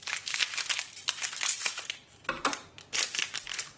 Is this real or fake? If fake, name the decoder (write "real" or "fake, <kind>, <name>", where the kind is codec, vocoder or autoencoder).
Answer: real